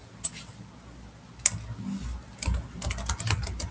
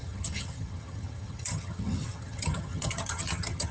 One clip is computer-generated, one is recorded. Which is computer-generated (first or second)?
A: second